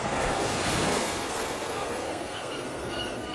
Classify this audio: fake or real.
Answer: fake